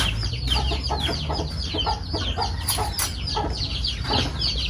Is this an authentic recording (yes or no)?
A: yes